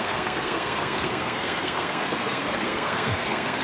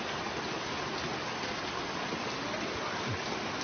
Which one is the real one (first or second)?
second